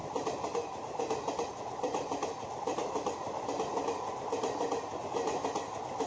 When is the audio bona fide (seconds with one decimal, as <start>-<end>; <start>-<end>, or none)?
0.0-6.1